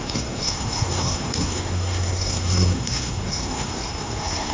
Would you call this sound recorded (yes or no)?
no